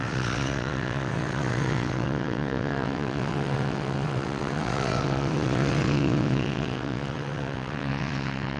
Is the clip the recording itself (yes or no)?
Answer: no